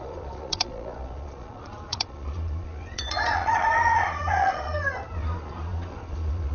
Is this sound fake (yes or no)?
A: yes